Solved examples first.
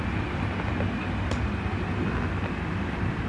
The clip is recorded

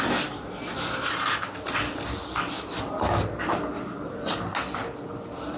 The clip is recorded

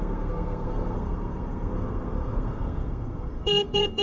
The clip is remade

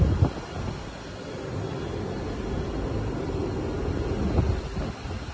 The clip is recorded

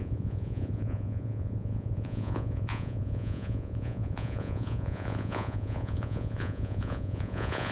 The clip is remade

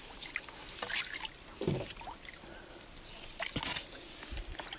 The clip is recorded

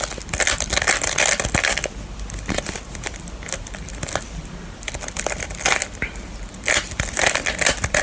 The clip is recorded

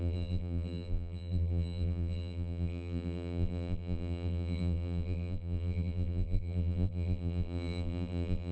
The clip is remade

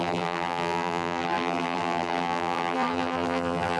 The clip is remade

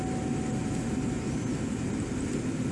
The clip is recorded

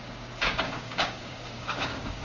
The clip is remade